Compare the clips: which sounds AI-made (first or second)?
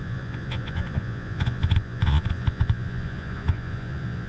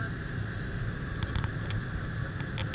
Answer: first